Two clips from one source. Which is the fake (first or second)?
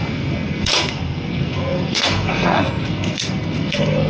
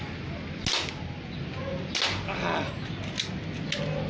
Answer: first